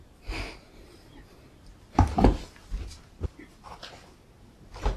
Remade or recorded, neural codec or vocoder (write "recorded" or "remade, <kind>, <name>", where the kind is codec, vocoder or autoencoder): recorded